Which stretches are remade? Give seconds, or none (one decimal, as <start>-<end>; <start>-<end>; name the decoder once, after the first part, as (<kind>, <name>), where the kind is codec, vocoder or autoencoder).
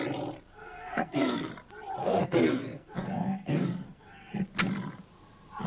0.5-1.5 (codec, SNAC); 2.0-4.3